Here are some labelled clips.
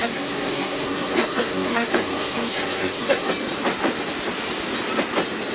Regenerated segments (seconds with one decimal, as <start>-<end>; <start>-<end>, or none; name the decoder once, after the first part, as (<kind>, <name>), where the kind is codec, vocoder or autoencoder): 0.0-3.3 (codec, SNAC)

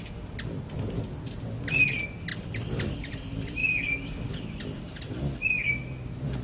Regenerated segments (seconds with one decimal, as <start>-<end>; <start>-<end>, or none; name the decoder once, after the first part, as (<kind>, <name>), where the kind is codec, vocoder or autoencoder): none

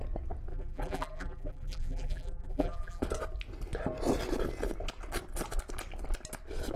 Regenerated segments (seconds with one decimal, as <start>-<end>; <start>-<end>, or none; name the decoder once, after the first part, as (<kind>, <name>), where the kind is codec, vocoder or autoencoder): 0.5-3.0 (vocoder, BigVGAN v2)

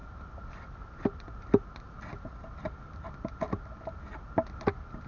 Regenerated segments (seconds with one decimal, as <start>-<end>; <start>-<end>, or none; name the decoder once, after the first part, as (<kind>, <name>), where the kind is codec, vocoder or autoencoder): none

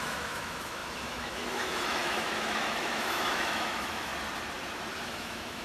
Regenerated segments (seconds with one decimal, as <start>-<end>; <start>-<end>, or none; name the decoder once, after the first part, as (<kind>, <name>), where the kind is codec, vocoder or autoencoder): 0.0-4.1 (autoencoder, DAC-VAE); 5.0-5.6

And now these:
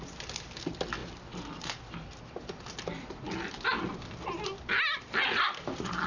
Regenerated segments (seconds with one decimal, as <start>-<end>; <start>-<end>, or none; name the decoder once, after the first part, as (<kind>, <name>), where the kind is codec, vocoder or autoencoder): none

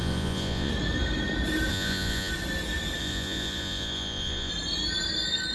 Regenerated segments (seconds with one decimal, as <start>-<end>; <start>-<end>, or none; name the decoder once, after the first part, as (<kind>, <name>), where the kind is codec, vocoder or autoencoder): 0.0-0.7 (vocoder, Vocos); 1.7-2.3; 3.0-4.5

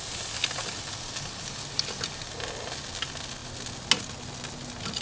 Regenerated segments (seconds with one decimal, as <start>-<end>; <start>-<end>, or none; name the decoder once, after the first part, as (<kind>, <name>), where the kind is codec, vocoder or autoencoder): none